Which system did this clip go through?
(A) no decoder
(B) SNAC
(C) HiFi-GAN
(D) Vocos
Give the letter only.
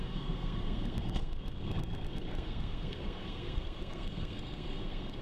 B